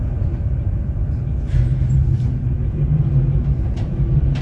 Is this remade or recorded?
recorded